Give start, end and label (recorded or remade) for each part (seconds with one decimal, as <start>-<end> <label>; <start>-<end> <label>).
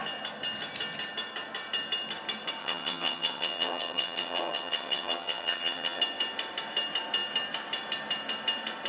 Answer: 0.0-2.6 recorded; 2.6-6.0 remade; 6.0-8.9 recorded